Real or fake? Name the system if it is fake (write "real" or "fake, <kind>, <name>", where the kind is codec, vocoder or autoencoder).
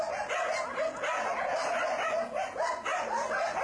real